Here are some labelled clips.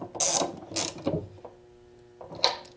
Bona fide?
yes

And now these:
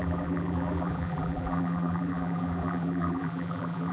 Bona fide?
no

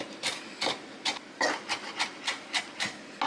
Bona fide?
yes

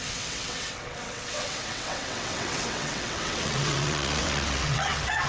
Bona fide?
no